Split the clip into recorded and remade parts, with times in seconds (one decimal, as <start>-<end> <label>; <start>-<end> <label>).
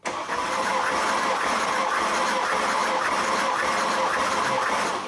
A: 0.0-0.7 remade; 0.7-1.4 recorded; 1.4-5.1 remade